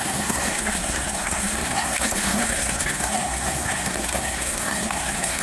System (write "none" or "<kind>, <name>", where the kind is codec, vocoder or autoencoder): codec, SNAC